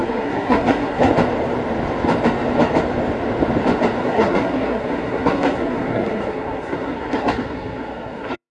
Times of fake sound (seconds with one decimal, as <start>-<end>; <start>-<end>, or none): 0.0-1.1; 4.0-8.5